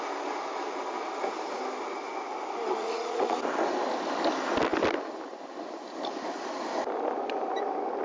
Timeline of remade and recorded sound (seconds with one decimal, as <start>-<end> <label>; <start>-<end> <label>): 0.0-2.8 recorded; 2.8-3.4 remade; 3.4-8.0 recorded